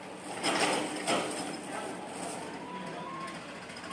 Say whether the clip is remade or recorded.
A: recorded